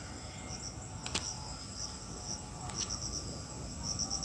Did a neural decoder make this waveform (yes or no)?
no